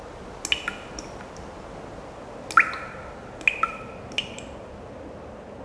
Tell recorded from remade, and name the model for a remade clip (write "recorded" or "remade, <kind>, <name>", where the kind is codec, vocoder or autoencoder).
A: recorded